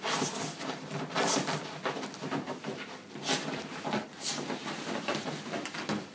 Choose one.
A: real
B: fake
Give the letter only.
A